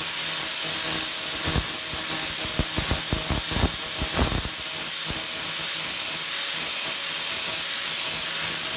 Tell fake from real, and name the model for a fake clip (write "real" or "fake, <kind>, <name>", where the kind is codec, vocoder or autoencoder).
real